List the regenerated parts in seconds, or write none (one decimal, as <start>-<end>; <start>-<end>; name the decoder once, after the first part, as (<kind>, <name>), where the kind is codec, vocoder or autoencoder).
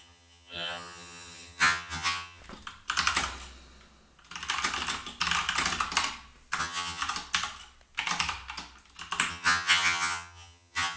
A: 0.0-2.4 (vocoder, HiFi-GAN); 6.6-7.0; 9.3-11.0